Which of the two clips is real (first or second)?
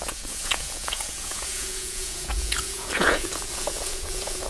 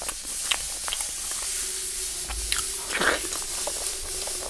second